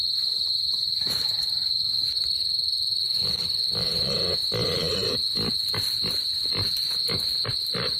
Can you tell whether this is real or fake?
real